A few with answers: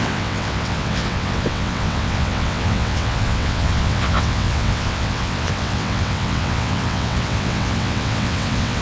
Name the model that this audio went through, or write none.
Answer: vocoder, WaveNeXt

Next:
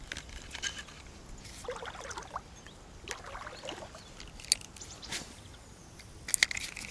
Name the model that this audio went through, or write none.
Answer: none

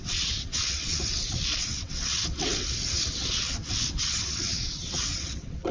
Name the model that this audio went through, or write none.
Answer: vocoder, WaveNeXt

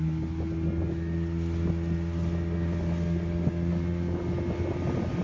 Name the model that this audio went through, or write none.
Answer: none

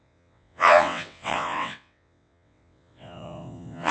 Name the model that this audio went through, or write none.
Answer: vocoder, WaveNeXt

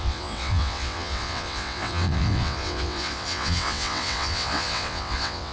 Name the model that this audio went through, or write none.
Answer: vocoder, WaveNeXt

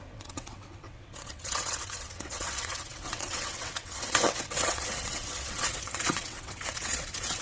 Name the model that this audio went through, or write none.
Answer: vocoder, WaveNeXt